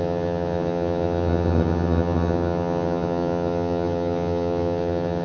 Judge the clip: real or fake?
fake